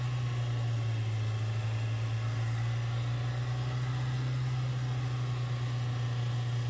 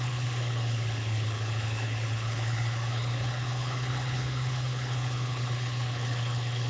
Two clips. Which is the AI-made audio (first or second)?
second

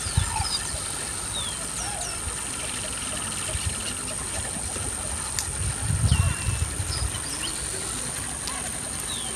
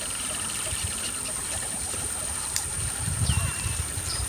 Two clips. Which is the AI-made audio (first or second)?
second